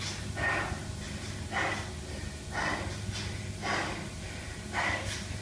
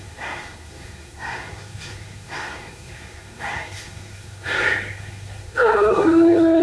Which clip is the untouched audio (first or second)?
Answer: first